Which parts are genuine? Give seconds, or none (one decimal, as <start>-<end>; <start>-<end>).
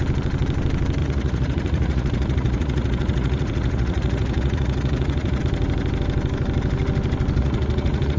0.0-1.0; 5.4-7.4